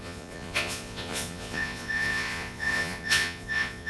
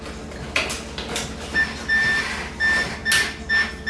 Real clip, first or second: second